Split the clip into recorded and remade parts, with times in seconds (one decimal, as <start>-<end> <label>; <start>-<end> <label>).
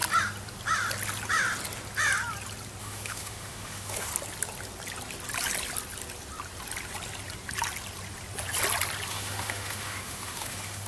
0.0-2.8 recorded; 2.8-4.1 remade; 4.1-9.1 recorded; 9.1-10.9 remade